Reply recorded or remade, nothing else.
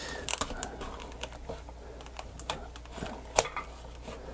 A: recorded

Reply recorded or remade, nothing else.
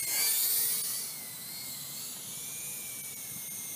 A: recorded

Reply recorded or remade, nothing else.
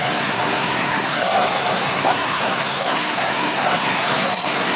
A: remade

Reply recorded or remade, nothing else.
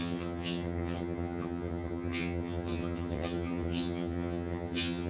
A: remade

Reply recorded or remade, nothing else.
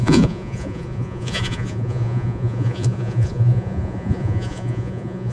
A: remade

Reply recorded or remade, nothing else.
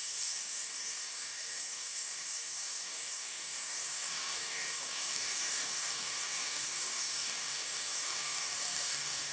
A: remade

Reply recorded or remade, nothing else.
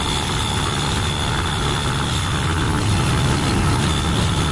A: recorded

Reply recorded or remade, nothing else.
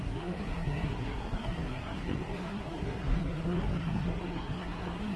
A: remade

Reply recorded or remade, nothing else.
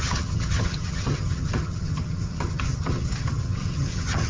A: remade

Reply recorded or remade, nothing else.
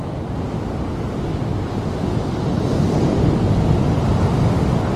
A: recorded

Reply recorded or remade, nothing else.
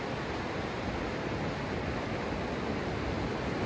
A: recorded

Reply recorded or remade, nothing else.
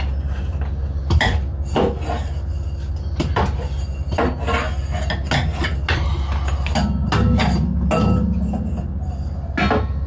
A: recorded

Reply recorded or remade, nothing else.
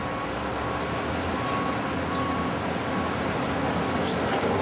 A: recorded